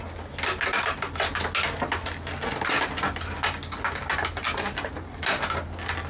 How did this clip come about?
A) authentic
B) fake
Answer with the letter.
A